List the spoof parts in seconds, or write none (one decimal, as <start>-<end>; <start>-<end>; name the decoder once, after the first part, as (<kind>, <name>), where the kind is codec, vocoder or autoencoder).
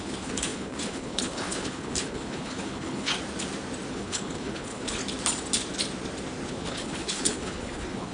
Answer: 0.0-3.1 (codec, HILCodec); 3.9-5.0; 6.5-8.1